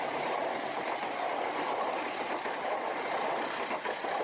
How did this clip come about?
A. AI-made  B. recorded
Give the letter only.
B